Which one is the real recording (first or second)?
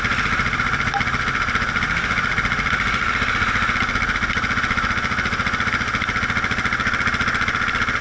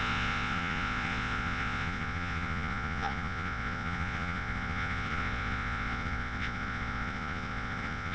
first